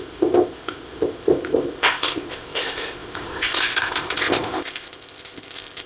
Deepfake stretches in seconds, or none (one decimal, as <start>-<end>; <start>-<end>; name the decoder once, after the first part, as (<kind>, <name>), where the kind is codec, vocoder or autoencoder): 0.0-5.9 (codec, ZipCodec)